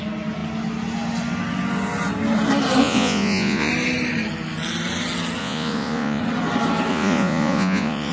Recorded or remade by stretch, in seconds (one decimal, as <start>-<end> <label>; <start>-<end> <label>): 0.0-2.8 recorded; 2.8-3.7 remade; 3.7-5.4 recorded; 5.4-6.2 remade; 6.2-6.9 recorded; 6.9-8.1 remade